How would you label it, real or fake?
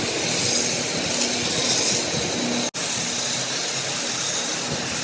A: real